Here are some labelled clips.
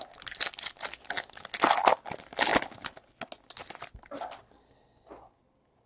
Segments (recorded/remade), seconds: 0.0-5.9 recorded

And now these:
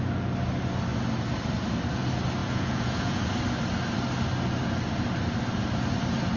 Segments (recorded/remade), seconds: 0.0-2.4 recorded; 2.4-3.2 remade; 3.2-6.4 recorded